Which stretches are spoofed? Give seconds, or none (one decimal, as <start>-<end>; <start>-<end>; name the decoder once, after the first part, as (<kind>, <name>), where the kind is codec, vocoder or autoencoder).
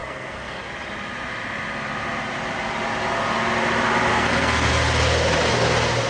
0.0-0.7 (codec, SNAC); 4.1-4.7